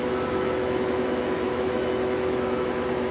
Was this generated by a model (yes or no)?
yes